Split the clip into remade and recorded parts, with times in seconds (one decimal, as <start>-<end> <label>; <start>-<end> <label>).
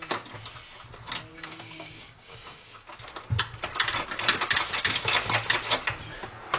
0.0-1.3 recorded; 1.3-2.9 remade; 2.9-6.6 recorded